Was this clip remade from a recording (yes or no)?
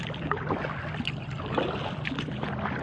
no